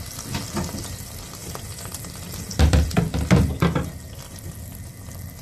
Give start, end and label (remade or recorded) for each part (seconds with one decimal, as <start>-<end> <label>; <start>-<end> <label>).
0.0-1.4 recorded; 1.4-4.6 remade; 4.6-5.4 recorded